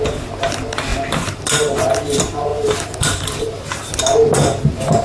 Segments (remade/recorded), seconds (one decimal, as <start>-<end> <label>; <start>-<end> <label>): 0.0-2.5 recorded; 2.5-3.4 remade; 3.4-5.0 recorded